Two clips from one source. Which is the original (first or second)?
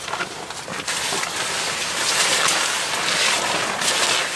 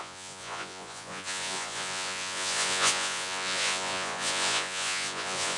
first